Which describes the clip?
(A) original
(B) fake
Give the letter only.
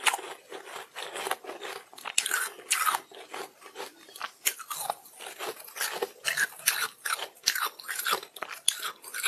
A